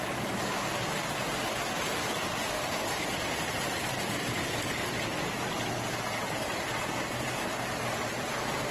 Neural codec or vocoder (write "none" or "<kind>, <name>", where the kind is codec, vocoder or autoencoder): none